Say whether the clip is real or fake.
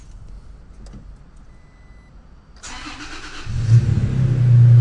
real